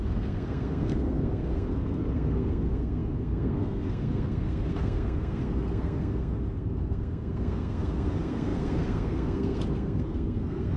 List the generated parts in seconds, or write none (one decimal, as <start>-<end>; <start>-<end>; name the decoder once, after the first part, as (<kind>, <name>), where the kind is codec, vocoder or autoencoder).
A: 0.0-10.8 (codec, SNAC)